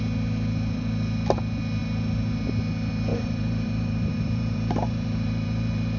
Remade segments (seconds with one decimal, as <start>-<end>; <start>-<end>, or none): 3.1-6.0